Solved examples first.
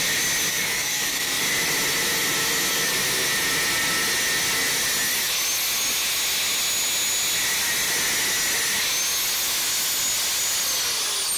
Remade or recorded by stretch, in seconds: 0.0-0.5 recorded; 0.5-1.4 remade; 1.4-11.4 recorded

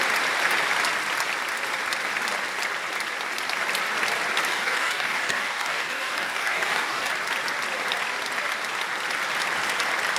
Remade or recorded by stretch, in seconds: 0.0-4.5 recorded; 4.5-7.1 remade; 7.1-10.2 recorded

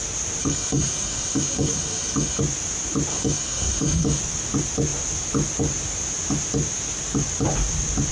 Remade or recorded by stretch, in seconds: 0.0-0.4 recorded; 0.4-2.4 remade; 2.4-3.1 recorded; 3.1-4.2 remade; 4.2-8.1 recorded

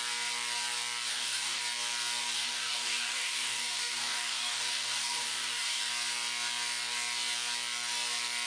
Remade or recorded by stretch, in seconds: 0.0-1.1 recorded; 1.1-1.6 remade; 1.6-2.2 recorded; 2.2-5.9 remade; 5.9-8.5 recorded

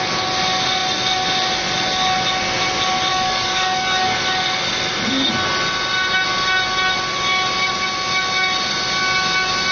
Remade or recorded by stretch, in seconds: 0.0-3.1 recorded; 3.1-4.2 remade; 4.2-9.7 recorded

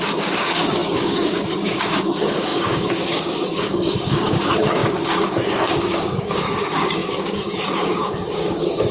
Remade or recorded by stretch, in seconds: 0.0-8.9 remade